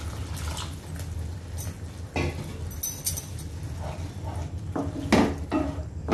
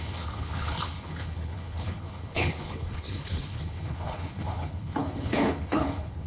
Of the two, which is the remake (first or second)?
second